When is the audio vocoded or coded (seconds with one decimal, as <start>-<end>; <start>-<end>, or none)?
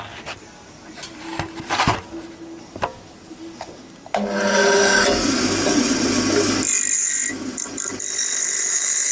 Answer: none